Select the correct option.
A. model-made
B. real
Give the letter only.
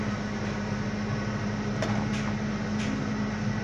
B